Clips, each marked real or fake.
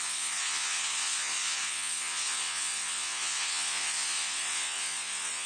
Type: fake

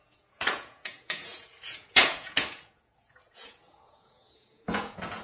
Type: fake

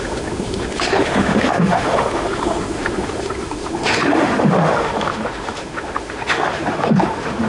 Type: fake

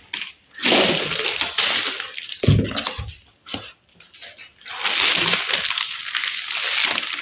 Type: real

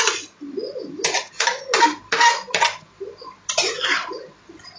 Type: real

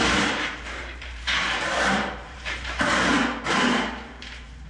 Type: fake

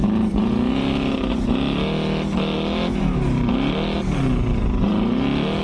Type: real